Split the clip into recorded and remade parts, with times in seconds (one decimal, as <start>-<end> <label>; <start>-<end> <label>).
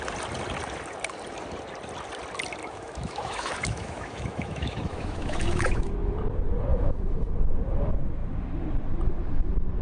0.0-2.6 recorded; 2.6-5.9 remade; 5.9-6.7 recorded; 6.7-7.3 remade; 7.3-9.8 recorded